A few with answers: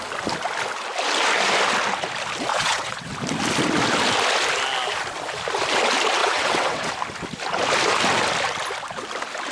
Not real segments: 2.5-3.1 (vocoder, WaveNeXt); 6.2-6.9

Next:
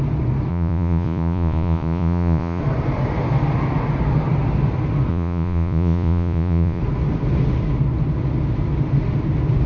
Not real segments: 0.5-2.6 (vocoder, Vocos); 5.1-6.8

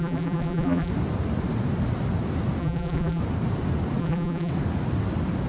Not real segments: 0.0-0.9 (vocoder, BigVGAN v2); 2.6-3.2; 4.0-4.5

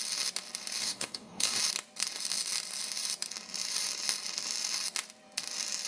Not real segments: 0.8-1.6 (codec, DAC)

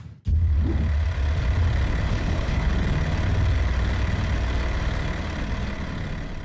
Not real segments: 2.1-2.7 (codec, HILCodec)

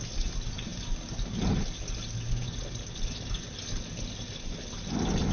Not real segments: none